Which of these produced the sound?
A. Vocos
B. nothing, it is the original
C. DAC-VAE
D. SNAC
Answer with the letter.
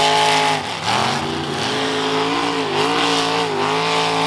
B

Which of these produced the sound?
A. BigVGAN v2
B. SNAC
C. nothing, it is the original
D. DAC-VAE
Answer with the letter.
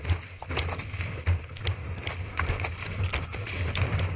C